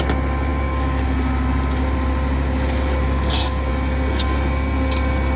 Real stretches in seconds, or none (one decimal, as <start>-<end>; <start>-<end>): 0.0-5.4